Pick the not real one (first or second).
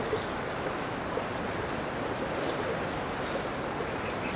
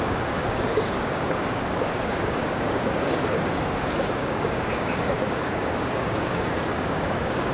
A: second